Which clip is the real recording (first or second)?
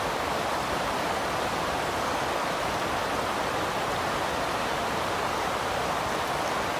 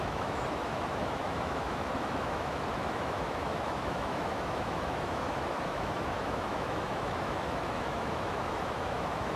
first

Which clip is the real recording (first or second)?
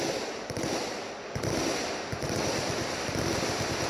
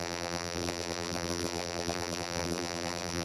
first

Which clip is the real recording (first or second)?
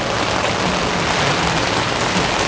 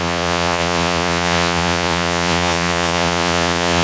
first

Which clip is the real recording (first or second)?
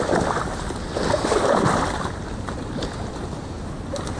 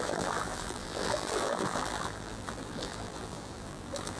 first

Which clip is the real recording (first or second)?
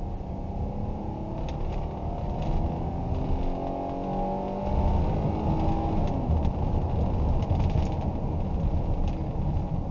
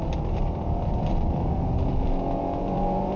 first